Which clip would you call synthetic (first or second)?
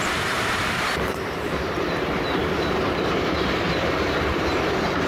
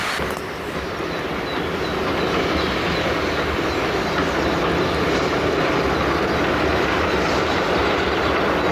first